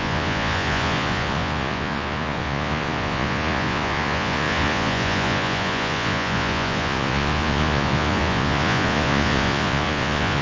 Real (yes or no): no